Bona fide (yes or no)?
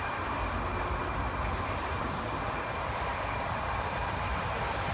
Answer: yes